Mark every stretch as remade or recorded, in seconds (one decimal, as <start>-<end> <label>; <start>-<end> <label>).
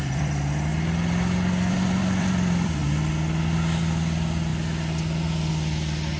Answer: 0.0-0.7 remade; 0.7-1.7 recorded; 1.7-2.8 remade; 2.8-3.8 recorded; 3.8-4.5 remade; 4.5-5.5 recorded; 5.5-6.2 remade